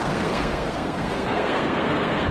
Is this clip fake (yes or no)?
yes